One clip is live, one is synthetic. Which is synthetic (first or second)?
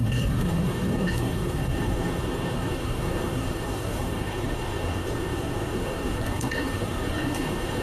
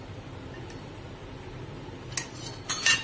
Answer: first